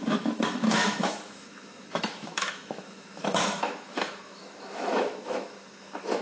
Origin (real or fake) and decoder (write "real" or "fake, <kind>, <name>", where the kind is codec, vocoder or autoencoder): fake, autoencoder, DAC-VAE